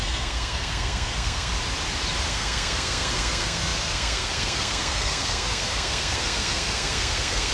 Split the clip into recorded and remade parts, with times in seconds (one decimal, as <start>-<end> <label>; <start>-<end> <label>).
0.0-1.5 remade; 1.5-2.3 recorded; 2.3-7.5 remade